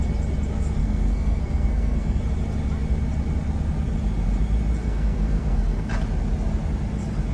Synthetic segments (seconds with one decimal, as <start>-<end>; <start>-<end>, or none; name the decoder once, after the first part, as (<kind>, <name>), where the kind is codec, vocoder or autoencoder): 0.8-2.2 (codec, SNAC); 4.8-5.9